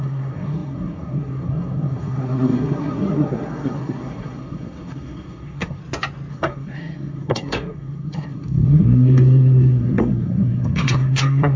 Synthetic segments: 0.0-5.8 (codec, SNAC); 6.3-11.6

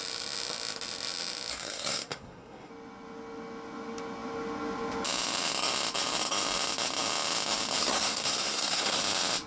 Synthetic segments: 1.5-2.7 (codec, SNAC); 7.8-9.0

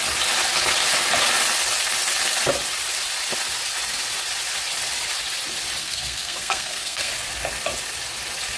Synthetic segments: 5.8-7.1 (codec, SNAC)

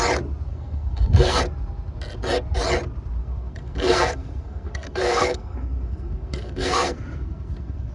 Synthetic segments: 0.5-1.4 (codec, SNAC); 3.2-7.9

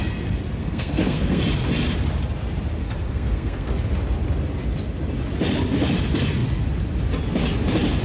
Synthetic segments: 0.6-1.4 (codec, SNAC); 2.8-3.7

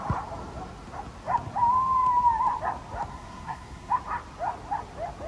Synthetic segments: 3.1-3.9 (codec, SNAC)